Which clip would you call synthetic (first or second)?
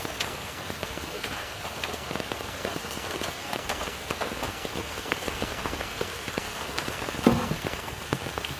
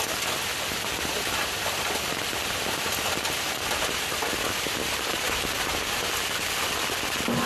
first